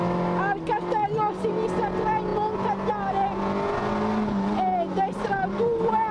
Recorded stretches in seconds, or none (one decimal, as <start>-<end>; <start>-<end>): 0.0-6.1